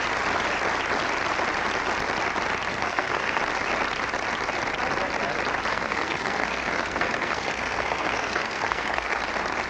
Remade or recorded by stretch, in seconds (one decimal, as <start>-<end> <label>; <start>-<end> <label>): 0.0-2.7 recorded; 2.7-3.4 remade; 3.4-5.7 recorded; 5.7-9.2 remade; 9.2-9.7 recorded